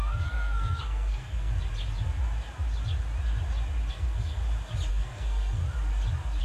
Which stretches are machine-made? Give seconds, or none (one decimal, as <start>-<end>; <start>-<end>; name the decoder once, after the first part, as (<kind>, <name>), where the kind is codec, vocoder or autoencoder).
0.0-1.5 (codec, SNAC); 3.9-4.4; 4.9-5.6